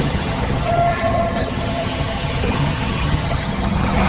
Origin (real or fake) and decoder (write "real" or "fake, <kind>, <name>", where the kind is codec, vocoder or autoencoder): fake, vocoder, HiFi-GAN